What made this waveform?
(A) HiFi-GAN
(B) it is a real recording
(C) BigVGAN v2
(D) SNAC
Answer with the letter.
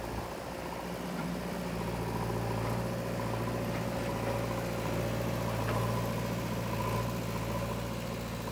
B